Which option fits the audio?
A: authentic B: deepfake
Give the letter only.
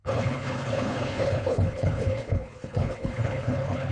B